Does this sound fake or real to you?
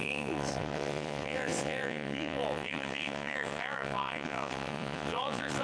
fake